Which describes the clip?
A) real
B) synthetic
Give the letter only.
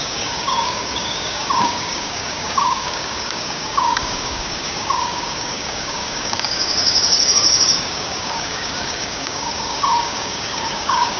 B